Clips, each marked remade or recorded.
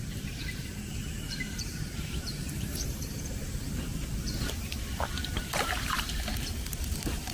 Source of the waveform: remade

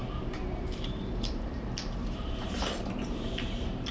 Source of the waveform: remade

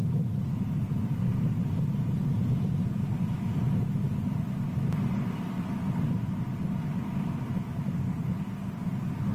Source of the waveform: recorded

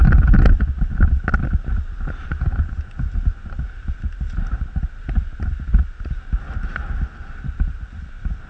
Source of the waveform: recorded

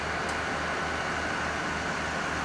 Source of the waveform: recorded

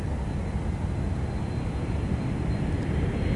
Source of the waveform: recorded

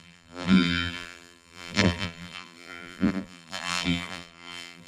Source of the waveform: remade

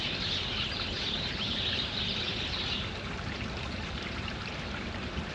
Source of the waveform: remade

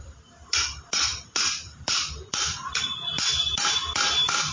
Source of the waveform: remade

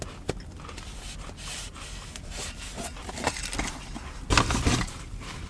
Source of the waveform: recorded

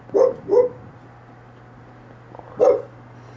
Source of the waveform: recorded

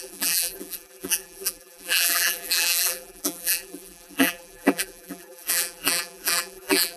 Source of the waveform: remade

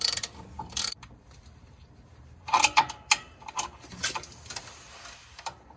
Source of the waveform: remade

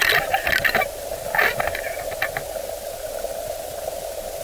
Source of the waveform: recorded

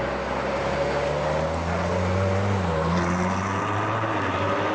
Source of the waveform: recorded